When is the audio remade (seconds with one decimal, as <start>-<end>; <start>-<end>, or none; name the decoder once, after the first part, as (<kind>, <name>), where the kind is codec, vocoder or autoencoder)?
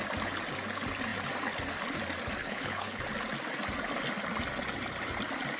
2.4-3.0 (codec, HILCodec)